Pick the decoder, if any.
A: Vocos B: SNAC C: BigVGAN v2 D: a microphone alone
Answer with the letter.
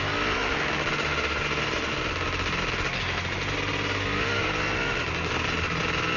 D